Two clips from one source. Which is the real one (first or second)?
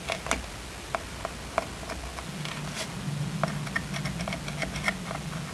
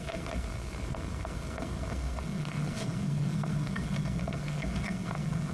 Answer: first